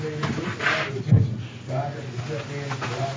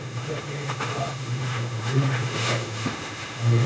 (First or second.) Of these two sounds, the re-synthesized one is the second